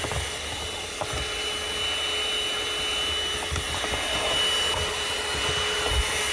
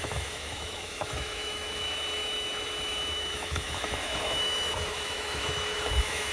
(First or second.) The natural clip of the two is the first